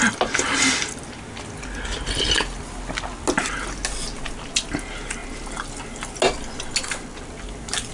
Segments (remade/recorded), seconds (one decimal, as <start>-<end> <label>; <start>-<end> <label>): 0.0-7.9 recorded